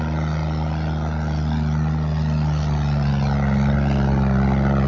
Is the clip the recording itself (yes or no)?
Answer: yes